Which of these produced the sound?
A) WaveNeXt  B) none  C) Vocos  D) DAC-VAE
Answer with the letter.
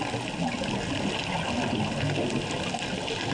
B